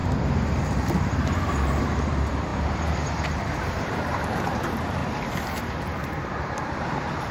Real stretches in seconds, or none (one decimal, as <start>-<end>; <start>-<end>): 5.0-5.6